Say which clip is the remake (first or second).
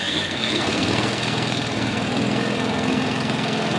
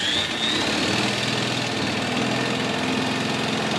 first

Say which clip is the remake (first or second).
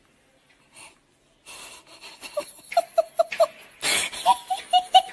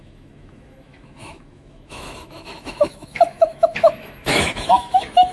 second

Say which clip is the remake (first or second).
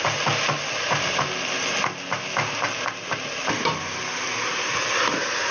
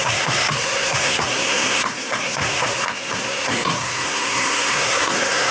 second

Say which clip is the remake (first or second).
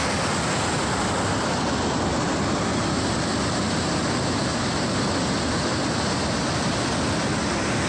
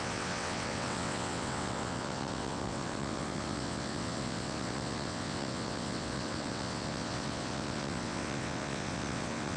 second